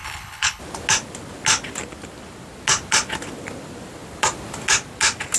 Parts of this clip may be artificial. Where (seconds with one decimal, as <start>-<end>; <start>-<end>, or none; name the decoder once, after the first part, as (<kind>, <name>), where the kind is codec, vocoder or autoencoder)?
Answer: 0.0-0.6 (codec, HILCodec)